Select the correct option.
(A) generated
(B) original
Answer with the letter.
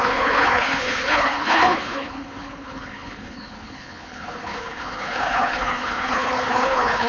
A